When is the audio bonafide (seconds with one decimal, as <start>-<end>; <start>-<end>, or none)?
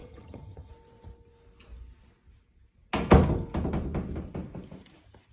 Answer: 0.7-5.3